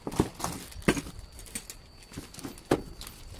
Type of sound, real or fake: real